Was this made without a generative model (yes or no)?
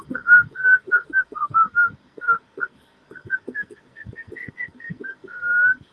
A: no